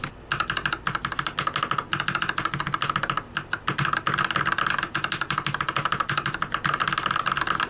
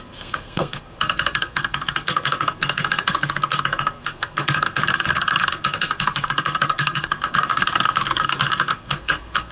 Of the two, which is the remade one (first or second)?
second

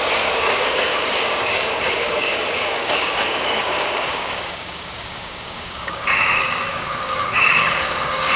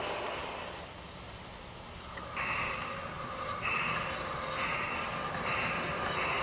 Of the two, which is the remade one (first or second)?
first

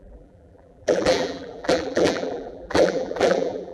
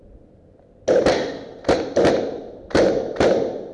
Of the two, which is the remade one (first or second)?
first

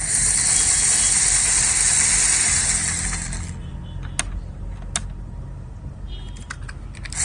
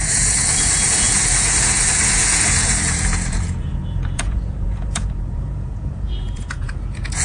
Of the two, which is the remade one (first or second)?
second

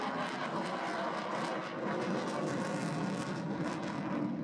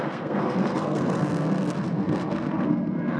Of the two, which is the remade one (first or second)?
second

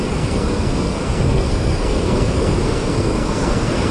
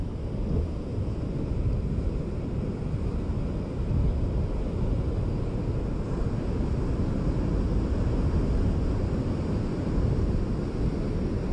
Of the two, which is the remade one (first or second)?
first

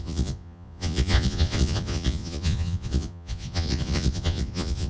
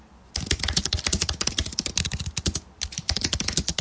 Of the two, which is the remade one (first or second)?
first